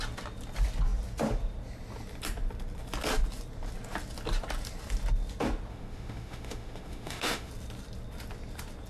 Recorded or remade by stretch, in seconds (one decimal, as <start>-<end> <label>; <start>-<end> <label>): 0.0-5.7 recorded; 5.7-7.5 remade; 7.5-8.9 recorded